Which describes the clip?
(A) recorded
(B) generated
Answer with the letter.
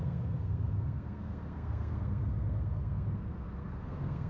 B